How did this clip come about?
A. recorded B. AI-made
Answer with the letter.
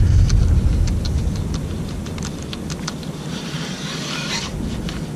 A